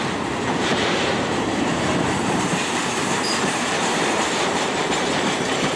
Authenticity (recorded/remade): remade